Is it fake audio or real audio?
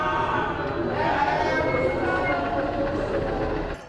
real